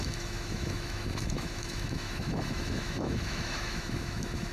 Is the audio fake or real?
fake